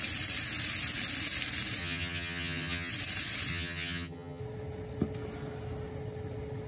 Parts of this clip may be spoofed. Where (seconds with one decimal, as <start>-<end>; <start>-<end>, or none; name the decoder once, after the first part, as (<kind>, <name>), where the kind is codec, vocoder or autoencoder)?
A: 1.8-2.9 (vocoder, HiFi-GAN); 3.5-4.4